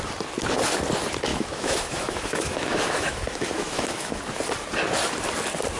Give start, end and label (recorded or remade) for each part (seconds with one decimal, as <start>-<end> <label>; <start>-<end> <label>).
0.0-1.3 recorded; 1.3-4.2 remade; 4.2-5.8 recorded

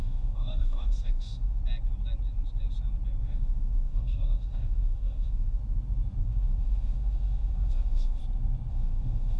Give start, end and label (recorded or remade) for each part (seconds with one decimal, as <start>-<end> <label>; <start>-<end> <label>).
0.0-1.6 remade; 1.6-3.2 recorded; 3.2-5.6 remade; 5.6-6.2 recorded; 6.2-8.2 remade; 8.2-8.7 recorded; 8.7-9.4 remade